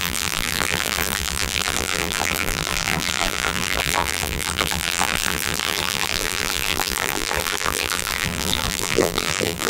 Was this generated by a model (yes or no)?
yes